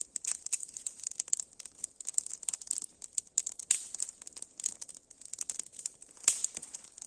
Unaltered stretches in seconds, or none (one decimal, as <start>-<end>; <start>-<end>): 0.0-3.6; 4.5-7.1